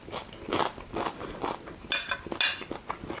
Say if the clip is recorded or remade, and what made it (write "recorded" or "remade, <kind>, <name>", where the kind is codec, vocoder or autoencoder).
recorded